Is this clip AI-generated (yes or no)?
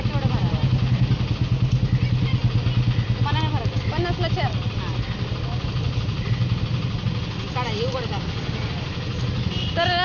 no